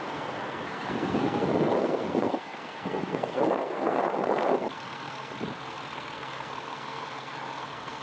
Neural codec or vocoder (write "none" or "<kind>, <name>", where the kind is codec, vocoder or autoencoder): codec, SNAC